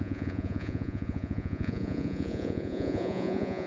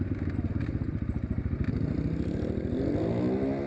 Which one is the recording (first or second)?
second